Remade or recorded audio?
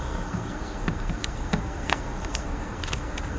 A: remade